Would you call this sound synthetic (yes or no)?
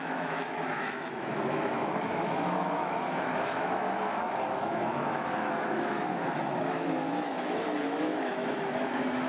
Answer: yes